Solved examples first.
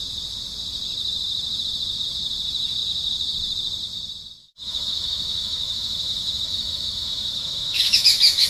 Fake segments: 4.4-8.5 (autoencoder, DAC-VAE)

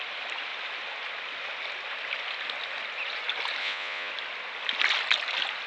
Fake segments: 3.6-4.1 (vocoder, WaveNeXt)

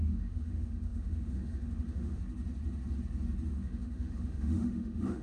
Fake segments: 0.0-2.2 (autoencoder, DAC-VAE); 3.5-5.2

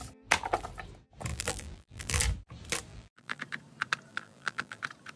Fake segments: 1.3-2.2 (vocoder, BigVGAN v2); 2.9-3.4; 4.1-4.8

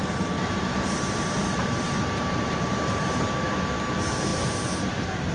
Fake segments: 0.0-3.2 (vocoder, BigVGAN v2); 4.3-5.3

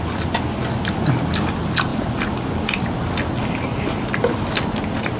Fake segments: none